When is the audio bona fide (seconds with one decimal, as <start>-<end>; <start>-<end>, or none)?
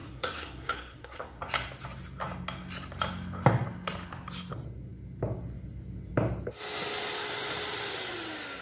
1.4-8.6